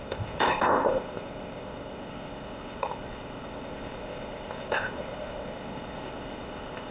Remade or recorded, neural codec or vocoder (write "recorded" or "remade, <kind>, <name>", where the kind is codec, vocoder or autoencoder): remade, codec, ZipCodec